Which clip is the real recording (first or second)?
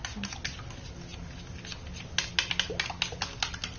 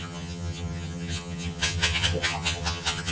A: first